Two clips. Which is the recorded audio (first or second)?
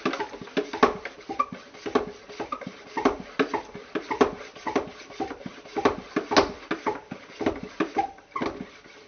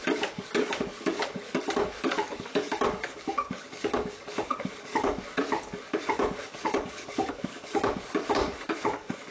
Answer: first